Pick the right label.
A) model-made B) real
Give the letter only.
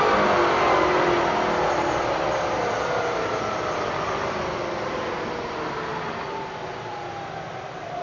B